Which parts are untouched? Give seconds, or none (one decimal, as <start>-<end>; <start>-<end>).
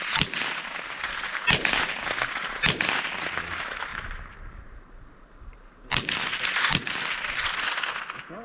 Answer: 0.0-3.9; 6.4-8.4